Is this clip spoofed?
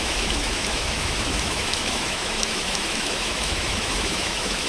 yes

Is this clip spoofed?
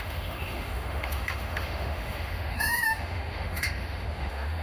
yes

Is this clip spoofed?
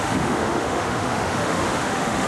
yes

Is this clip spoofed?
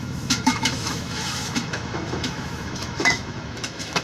yes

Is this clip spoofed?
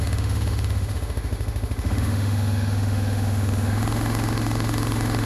yes